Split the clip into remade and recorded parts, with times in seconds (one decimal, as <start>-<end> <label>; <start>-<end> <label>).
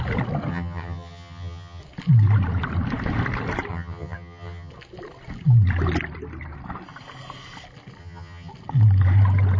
0.0-0.5 recorded; 0.5-1.8 remade; 1.8-3.7 recorded; 3.7-4.7 remade; 4.7-8.0 recorded; 8.0-8.5 remade; 8.5-9.6 recorded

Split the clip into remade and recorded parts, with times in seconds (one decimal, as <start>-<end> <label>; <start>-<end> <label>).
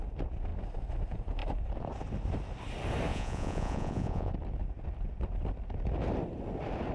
0.0-3.1 recorded; 3.1-4.3 remade; 4.3-6.9 recorded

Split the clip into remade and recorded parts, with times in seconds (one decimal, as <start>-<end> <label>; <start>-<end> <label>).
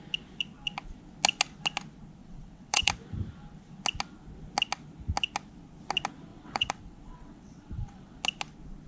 0.0-2.2 recorded; 2.2-2.9 remade; 2.9-6.3 recorded; 6.3-8.2 remade; 8.2-8.9 recorded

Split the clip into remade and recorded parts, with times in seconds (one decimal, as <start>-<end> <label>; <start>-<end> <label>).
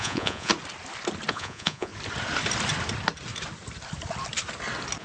0.0-0.5 remade; 0.5-1.3 recorded; 1.3-1.9 remade; 1.9-5.0 recorded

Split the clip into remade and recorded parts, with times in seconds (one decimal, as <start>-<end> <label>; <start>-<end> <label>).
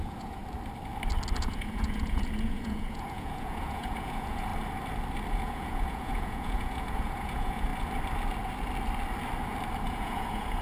0.0-0.4 remade; 0.4-1.4 recorded; 1.4-4.5 remade; 4.5-5.3 recorded; 5.3-7.7 remade; 7.7-9.9 recorded; 9.9-10.6 remade